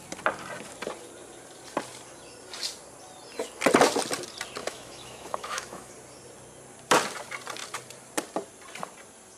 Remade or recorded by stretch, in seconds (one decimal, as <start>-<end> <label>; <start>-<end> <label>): 0.0-4.6 recorded; 4.6-5.9 remade; 5.9-9.4 recorded